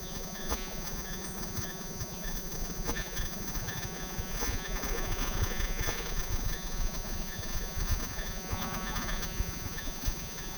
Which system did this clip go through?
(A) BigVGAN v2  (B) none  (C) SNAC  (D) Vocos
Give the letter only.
D